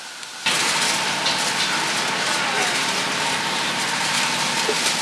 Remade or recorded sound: recorded